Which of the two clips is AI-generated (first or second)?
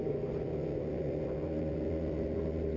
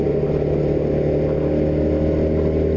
first